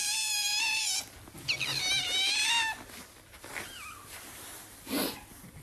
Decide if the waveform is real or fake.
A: real